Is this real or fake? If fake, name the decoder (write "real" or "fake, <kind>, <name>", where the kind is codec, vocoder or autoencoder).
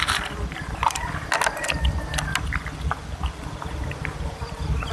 real